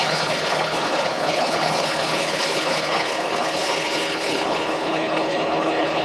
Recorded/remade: remade